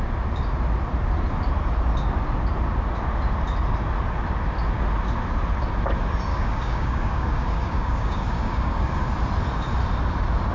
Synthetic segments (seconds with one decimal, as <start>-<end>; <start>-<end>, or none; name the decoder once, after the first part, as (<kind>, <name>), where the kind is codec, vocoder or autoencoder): 6.3-9.1 (codec, DAC)